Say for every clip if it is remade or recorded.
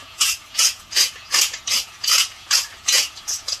remade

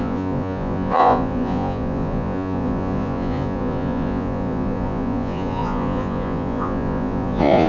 remade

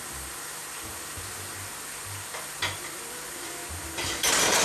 recorded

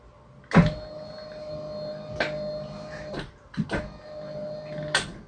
recorded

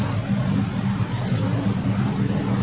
recorded